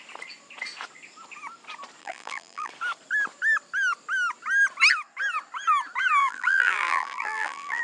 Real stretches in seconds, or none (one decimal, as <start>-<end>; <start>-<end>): 0.0-2.0; 2.7-6.2